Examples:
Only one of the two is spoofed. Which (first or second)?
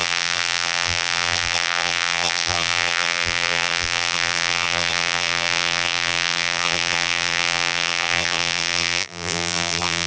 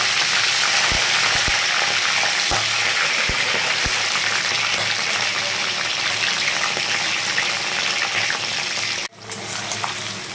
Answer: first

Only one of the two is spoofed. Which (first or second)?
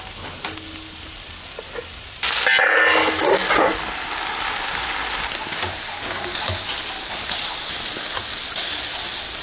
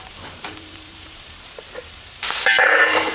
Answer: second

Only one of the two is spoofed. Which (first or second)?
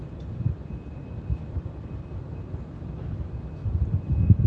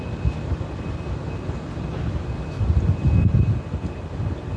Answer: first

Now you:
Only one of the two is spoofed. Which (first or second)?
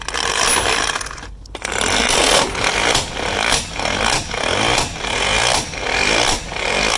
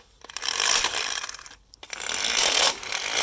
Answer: second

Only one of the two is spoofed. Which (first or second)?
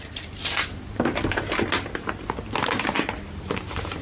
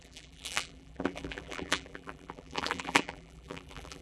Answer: second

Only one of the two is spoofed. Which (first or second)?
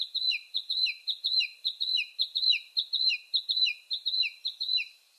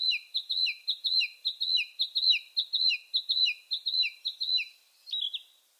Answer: first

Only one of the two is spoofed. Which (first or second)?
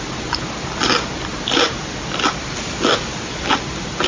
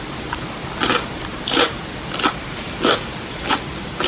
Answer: second